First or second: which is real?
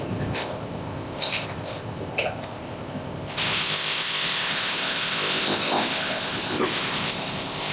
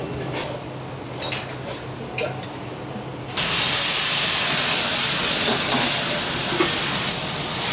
second